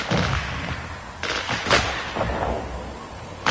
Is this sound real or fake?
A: real